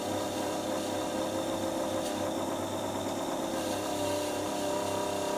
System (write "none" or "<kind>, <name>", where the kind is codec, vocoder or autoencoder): none